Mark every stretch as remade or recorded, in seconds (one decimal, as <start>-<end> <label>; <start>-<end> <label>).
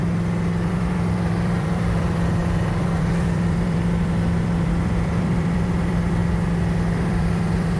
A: 0.0-0.7 recorded; 0.7-6.2 remade; 6.2-7.0 recorded; 7.0-7.8 remade